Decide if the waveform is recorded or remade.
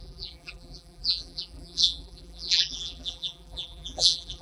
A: remade